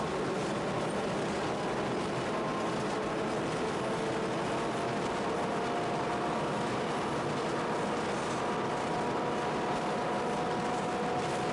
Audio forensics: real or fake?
real